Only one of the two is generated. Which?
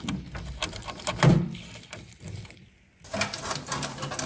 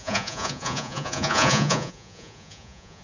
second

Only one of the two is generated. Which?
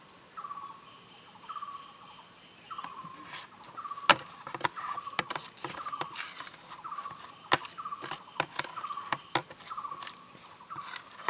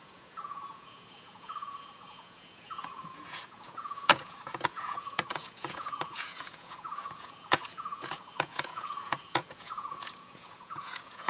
second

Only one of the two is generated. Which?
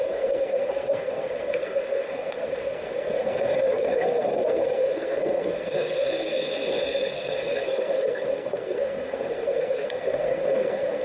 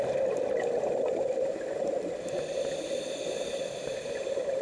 first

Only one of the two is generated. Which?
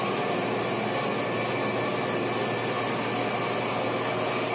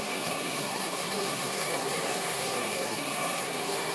second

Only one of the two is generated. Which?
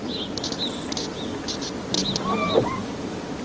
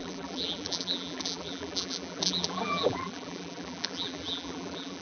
second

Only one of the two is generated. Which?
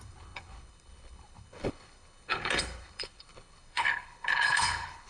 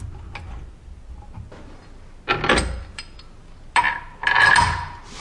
first